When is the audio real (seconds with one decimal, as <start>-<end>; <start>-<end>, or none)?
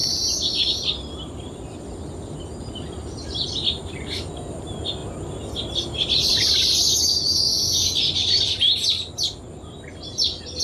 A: 1.9-10.6